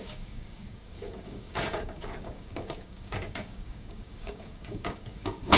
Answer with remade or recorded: remade